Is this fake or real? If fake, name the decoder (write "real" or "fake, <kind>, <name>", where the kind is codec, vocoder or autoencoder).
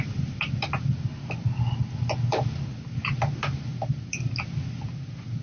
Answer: real